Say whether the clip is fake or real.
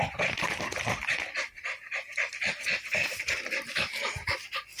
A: fake